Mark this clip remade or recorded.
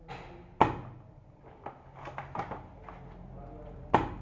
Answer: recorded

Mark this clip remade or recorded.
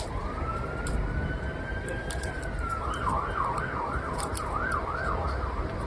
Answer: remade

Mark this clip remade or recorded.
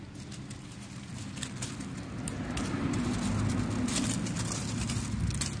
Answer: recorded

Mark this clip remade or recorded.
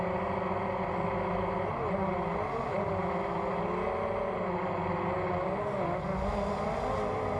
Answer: recorded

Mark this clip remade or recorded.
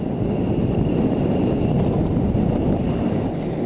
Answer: recorded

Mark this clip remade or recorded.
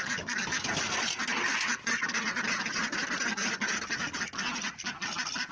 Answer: recorded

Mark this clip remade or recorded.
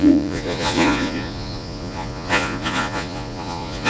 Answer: remade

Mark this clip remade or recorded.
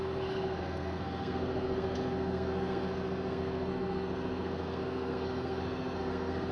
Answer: remade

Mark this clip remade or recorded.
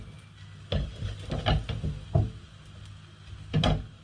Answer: recorded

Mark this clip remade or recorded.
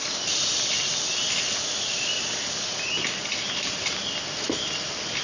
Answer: recorded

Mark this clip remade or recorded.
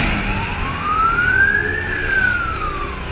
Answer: recorded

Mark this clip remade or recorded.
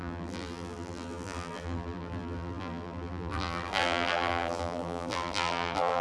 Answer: remade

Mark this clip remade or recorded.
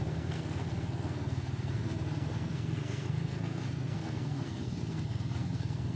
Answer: remade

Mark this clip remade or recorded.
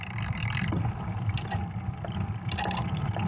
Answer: recorded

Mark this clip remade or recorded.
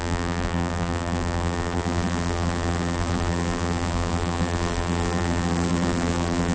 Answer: remade